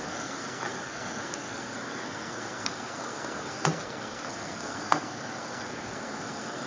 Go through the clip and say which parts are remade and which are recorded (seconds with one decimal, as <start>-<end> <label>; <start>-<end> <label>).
0.0-6.7 remade